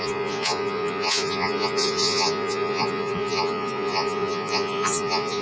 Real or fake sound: fake